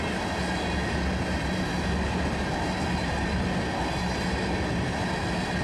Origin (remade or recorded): recorded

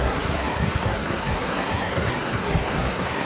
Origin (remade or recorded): remade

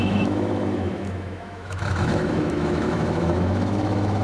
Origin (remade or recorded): remade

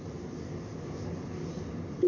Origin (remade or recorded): recorded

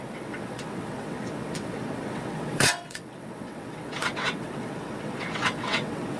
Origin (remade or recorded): remade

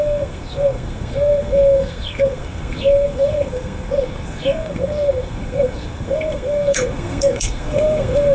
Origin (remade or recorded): remade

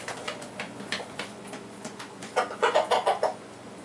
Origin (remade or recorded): remade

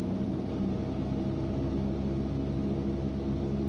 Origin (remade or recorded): recorded